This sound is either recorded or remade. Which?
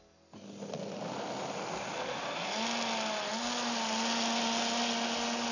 recorded